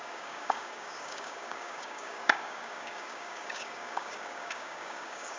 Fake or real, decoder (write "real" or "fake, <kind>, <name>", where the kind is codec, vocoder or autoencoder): fake, codec, DAC